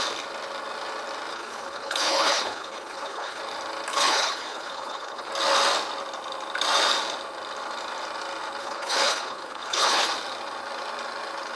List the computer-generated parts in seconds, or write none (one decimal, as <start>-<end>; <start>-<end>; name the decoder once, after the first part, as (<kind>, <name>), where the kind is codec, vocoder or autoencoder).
1.3-3.4 (codec, HILCodec); 3.9-5.3; 8.6-10.1